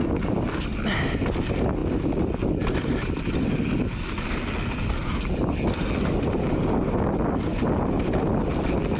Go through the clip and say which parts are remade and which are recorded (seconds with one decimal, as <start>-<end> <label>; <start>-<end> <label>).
0.0-9.0 recorded